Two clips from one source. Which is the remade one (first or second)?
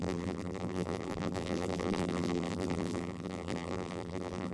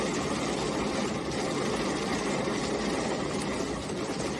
first